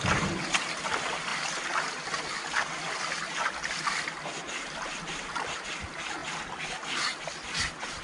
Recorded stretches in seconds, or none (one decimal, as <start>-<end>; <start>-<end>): 0.0-8.0